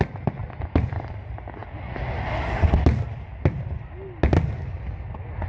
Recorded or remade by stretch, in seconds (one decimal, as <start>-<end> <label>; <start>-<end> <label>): 0.0-5.5 recorded